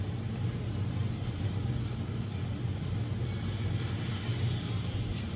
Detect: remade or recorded recorded